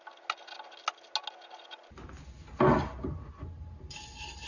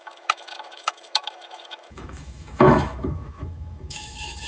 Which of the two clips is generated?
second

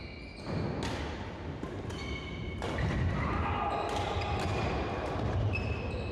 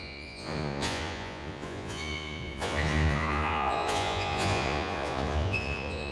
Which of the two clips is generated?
second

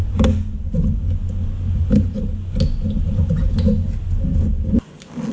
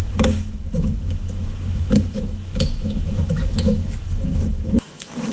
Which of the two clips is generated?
second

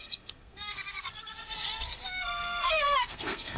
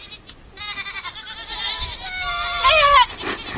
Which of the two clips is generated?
first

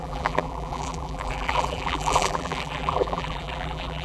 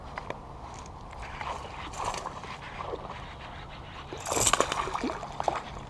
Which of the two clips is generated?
first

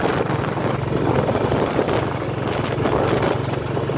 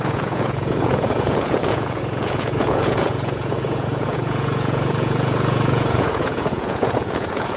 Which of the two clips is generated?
second